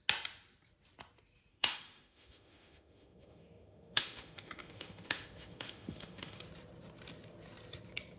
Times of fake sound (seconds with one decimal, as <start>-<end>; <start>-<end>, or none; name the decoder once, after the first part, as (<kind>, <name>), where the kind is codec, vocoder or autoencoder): 1.5-6.4 (autoencoder, DAC-VAE)

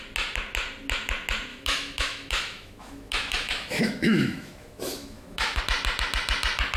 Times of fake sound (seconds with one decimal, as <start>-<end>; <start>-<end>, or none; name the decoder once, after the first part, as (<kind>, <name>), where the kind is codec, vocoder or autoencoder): 1.5-5.6 (autoencoder, DAC-VAE)